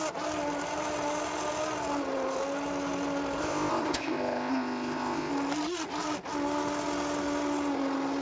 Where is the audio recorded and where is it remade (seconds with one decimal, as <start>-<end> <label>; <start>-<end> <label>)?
0.0-3.4 recorded; 3.4-5.3 remade; 5.3-8.2 recorded